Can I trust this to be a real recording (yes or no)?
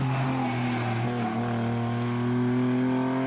yes